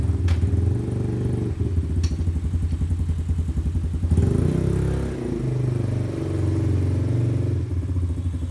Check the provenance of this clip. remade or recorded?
recorded